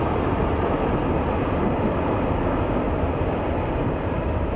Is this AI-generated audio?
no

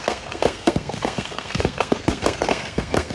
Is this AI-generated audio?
yes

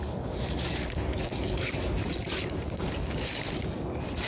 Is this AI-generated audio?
yes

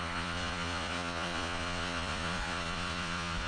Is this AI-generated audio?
yes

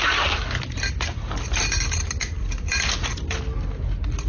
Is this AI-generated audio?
no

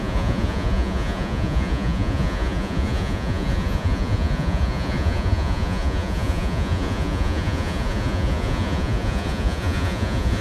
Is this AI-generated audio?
yes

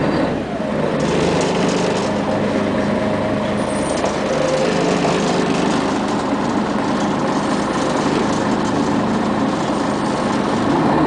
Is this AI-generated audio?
no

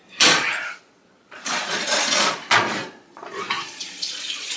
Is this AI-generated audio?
yes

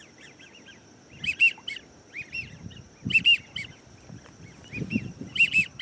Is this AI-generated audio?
no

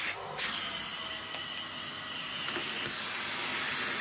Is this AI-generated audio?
no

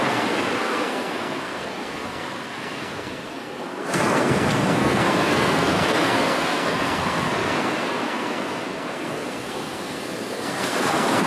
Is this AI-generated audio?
yes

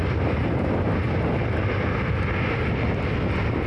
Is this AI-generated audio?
no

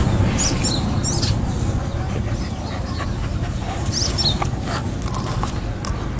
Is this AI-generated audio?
no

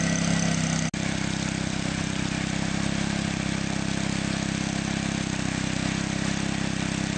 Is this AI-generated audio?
no